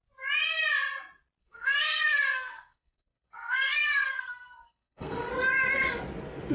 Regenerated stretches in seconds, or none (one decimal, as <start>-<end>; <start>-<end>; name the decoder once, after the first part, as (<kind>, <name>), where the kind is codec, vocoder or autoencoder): 1.4-5.3 (codec, SNAC)